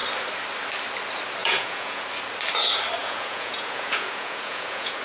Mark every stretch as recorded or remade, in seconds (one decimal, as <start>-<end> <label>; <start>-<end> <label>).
0.0-1.4 recorded; 1.4-2.0 remade; 2.0-3.0 recorded; 3.0-5.0 remade